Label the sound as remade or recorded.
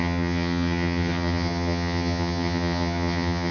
remade